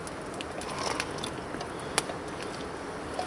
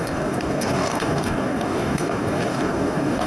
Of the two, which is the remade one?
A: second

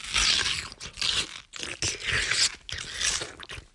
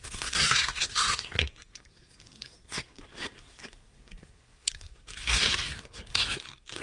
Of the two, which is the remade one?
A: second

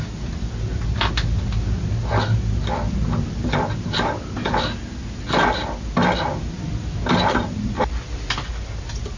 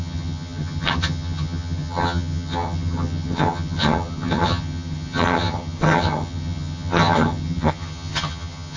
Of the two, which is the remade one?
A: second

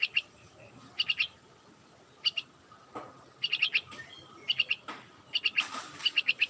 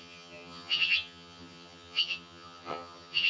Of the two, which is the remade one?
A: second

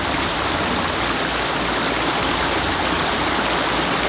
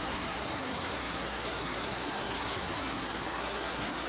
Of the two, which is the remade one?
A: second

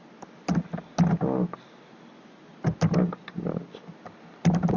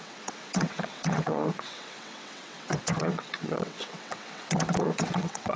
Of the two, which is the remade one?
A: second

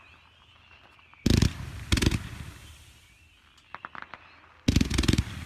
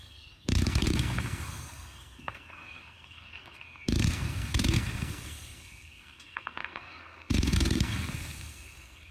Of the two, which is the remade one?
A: second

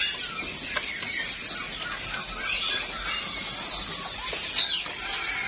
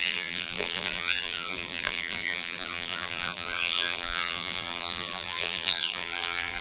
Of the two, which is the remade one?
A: second